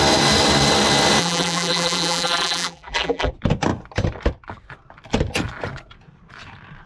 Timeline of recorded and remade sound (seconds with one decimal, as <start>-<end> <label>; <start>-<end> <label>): 0.0-1.2 recorded; 1.2-3.3 remade; 3.3-6.9 recorded